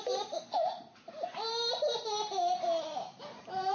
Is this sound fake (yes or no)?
yes